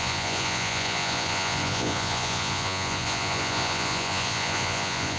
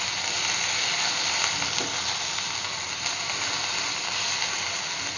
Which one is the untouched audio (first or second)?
second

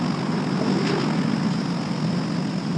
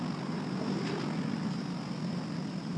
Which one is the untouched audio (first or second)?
first